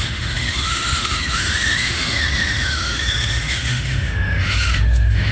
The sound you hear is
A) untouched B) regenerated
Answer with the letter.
B